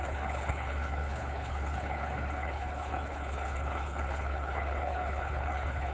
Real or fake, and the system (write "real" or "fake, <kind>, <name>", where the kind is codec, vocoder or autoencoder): fake, codec, HILCodec